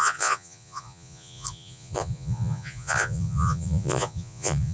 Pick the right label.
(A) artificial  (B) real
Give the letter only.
A